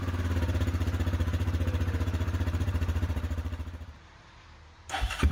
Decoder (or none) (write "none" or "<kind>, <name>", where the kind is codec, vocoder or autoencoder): vocoder, BigVGAN v2